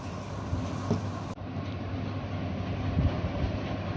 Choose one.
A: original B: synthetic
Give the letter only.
A